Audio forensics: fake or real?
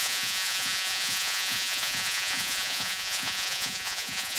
fake